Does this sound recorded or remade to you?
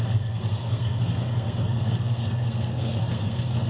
remade